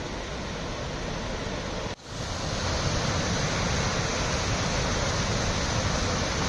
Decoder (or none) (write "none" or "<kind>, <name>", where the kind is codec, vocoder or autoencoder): none